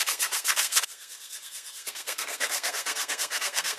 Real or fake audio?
fake